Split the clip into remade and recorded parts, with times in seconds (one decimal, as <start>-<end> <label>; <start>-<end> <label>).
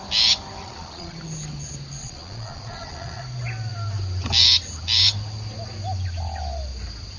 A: 0.0-0.6 recorded; 0.6-1.2 remade; 1.2-2.0 recorded; 2.0-3.2 remade; 3.2-7.2 recorded